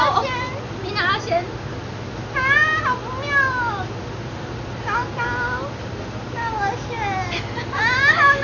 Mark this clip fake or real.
real